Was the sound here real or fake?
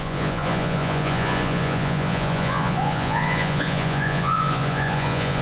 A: fake